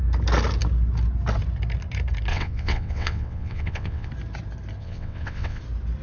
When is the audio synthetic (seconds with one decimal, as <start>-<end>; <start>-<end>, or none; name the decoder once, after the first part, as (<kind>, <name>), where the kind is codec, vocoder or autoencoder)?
2.3-4.1 (vocoder, WaveNeXt); 4.8-5.6